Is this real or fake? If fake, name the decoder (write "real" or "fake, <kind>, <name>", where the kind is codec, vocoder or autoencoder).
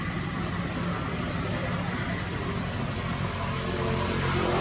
real